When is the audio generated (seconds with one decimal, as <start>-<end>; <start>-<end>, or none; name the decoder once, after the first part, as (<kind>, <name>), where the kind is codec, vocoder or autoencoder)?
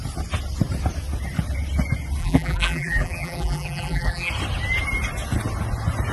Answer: 2.2-4.3 (vocoder, BigVGAN v2)